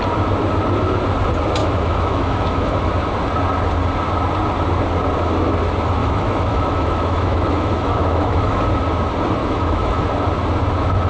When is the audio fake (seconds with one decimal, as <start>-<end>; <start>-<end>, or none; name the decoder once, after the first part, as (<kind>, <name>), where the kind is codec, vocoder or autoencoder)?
1.6-2.9 (autoencoder, DAC-VAE); 6.0-8.6; 9.4-10.1